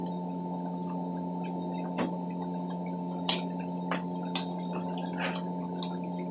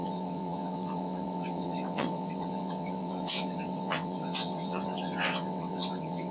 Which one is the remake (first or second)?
second